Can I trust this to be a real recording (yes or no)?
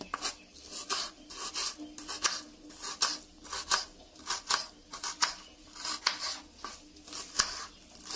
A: yes